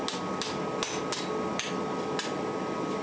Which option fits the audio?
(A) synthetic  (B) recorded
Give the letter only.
B